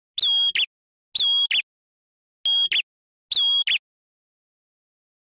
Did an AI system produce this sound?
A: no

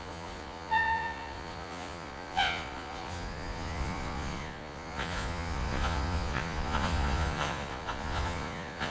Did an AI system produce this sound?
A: yes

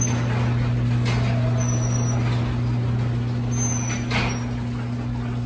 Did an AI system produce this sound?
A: no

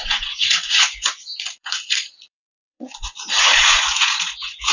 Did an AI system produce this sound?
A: yes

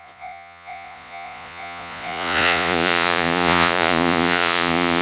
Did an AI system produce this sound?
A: yes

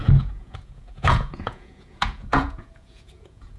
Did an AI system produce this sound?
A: yes